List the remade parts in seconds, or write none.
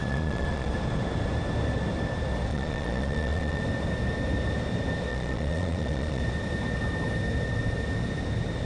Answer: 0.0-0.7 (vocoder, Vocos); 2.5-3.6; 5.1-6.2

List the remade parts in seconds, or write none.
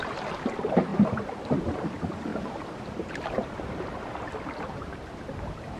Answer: 0.0-5.8 (vocoder, BigVGAN v2)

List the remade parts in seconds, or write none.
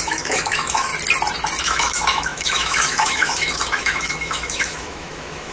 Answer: 0.0-0.9 (autoencoder, DAC-VAE); 1.6-5.5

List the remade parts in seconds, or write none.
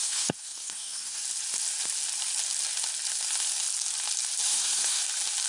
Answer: 0.0-1.2 (codec, SNAC); 4.5-5.0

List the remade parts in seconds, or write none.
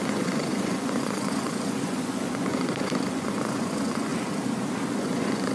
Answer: 0.0-4.1 (vocoder, Vocos); 4.9-5.5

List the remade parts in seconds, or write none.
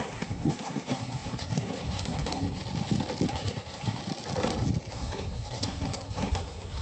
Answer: 0.0-2.6 (codec, SNAC); 3.3-4.0; 4.9-6.8